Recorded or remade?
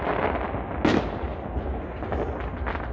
recorded